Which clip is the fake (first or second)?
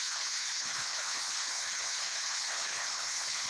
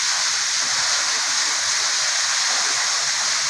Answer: first